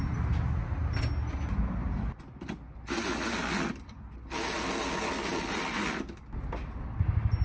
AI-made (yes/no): no